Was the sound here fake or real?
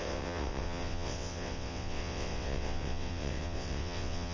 fake